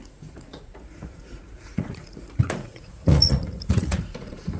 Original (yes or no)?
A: no